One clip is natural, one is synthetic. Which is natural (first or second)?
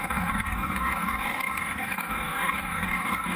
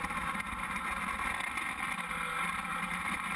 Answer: second